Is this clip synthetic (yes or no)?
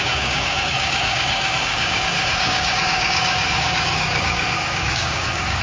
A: yes